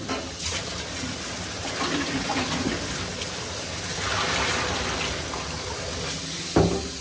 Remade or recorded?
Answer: recorded